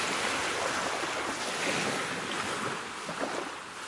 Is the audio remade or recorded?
recorded